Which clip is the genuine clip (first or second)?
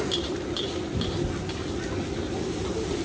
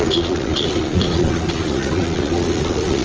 first